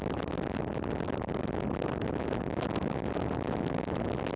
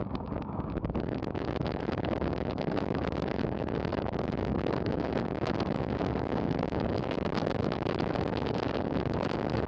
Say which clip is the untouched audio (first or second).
first